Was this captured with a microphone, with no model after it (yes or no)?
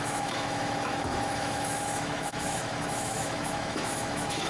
no